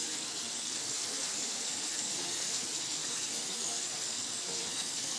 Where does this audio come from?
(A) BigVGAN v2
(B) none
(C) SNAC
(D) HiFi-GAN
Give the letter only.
C